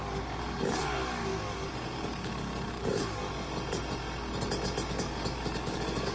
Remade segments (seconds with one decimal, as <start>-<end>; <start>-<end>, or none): 0.0-3.2; 4.9-6.1